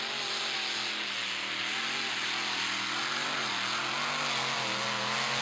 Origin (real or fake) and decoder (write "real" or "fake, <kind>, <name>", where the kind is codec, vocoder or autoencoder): real